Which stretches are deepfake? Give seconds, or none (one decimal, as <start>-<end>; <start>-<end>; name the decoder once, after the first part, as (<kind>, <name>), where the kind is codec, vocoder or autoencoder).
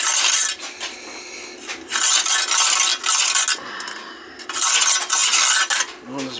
none